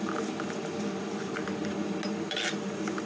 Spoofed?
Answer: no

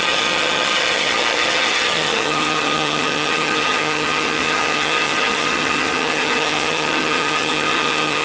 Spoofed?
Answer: yes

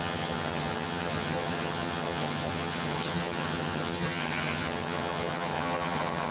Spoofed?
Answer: yes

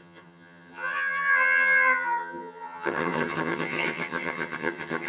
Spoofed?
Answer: yes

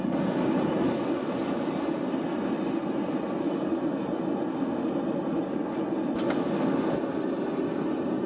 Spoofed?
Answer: no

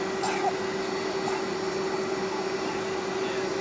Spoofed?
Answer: no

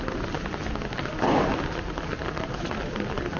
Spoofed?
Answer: no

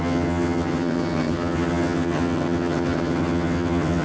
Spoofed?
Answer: yes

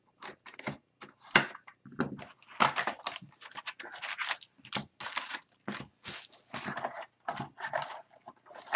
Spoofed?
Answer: no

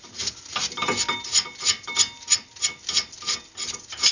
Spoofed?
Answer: no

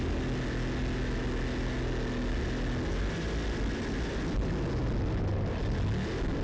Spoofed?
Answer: no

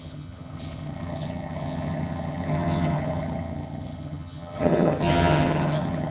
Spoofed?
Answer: yes